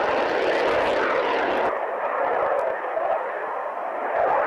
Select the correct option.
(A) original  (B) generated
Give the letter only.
A